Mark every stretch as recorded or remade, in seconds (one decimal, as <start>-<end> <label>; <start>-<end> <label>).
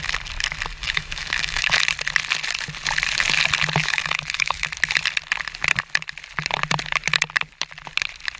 0.0-0.8 recorded; 0.8-1.8 remade; 1.8-3.8 recorded; 3.8-4.7 remade; 4.7-8.4 recorded